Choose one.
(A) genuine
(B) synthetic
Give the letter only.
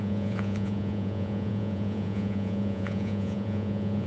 B